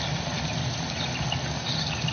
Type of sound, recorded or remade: recorded